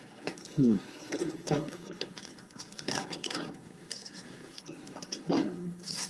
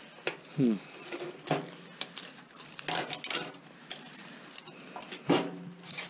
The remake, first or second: first